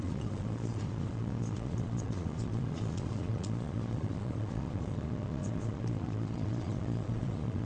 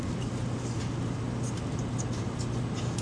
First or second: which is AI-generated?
first